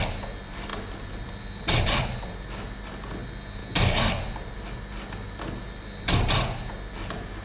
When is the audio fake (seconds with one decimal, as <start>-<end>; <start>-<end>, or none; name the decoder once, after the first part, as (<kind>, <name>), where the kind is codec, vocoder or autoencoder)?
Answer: none